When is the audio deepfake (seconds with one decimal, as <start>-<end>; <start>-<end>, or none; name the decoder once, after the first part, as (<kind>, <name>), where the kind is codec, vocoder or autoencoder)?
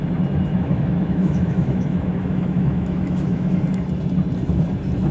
0.5-3.6 (autoencoder, DAC-VAE)